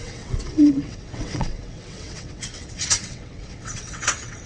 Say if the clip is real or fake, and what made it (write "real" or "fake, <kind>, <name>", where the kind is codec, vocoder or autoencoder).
fake, vocoder, WaveNeXt